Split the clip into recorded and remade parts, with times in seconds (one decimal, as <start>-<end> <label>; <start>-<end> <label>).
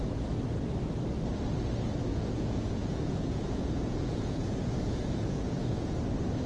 0.0-2.1 recorded; 2.1-6.0 remade; 6.0-6.5 recorded